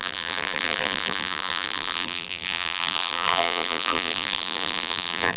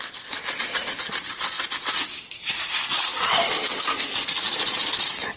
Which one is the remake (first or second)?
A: first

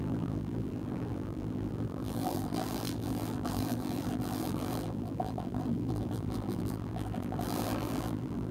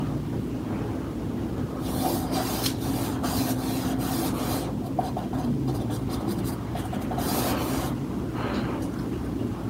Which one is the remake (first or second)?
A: first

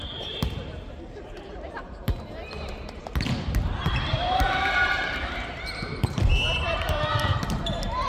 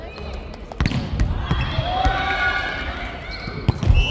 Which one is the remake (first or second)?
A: first